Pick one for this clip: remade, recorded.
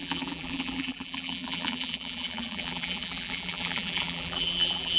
remade